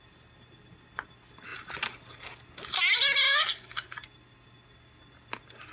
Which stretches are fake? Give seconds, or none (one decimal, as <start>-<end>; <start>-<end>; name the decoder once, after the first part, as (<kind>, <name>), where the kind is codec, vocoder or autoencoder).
none